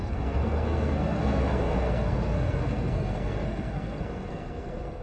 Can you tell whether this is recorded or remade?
remade